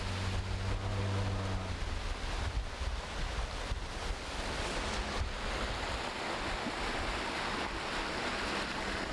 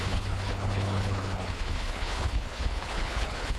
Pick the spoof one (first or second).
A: second